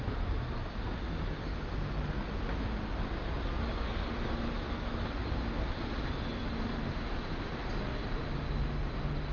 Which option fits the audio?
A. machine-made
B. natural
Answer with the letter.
B